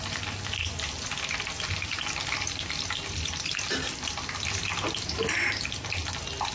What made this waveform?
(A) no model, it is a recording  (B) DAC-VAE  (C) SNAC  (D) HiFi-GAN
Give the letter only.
A